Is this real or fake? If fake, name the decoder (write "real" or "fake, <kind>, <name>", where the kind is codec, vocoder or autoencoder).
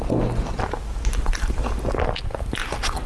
real